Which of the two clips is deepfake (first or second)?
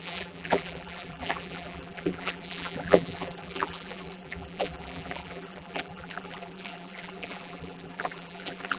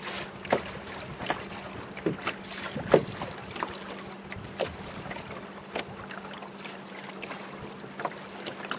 first